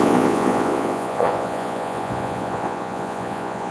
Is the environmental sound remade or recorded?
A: remade